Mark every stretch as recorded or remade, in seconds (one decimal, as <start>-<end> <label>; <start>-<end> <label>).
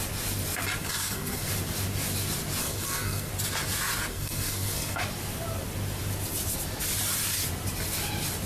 0.0-0.8 recorded; 0.8-1.5 remade; 1.5-2.6 recorded; 2.6-3.3 remade; 3.3-4.1 recorded; 4.1-5.0 remade; 5.0-8.5 recorded